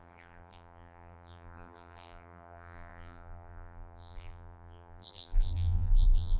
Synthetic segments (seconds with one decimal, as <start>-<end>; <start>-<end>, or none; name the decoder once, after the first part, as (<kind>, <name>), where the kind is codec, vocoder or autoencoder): 0.0-6.4 (vocoder, BigVGAN v2)